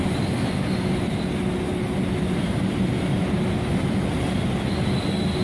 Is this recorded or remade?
recorded